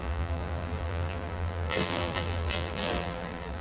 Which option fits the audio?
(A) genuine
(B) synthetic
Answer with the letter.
B